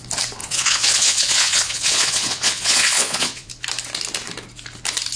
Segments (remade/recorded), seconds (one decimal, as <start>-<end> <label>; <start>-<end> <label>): 0.0-0.4 recorded; 0.4-3.5 remade; 3.5-5.2 recorded

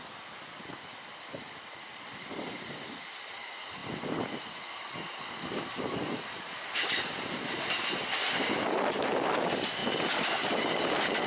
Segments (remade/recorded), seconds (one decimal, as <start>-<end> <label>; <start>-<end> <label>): 0.0-0.9 recorded; 0.9-2.7 remade; 2.7-3.8 recorded; 3.8-6.6 remade; 6.6-9.8 recorded; 9.8-10.8 remade; 10.8-11.3 recorded